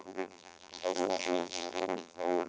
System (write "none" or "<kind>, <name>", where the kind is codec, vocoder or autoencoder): vocoder, BigVGAN v2